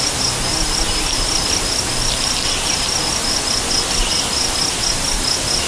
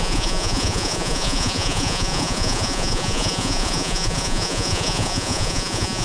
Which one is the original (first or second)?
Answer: first